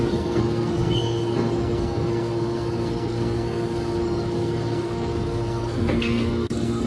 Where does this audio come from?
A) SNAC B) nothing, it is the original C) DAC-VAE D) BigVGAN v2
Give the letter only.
A